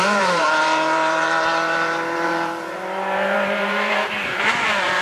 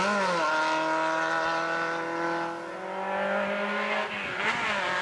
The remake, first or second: first